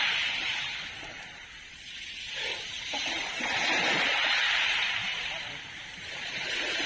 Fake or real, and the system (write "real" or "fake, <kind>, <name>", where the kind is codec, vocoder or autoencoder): fake, vocoder, BigVGAN v2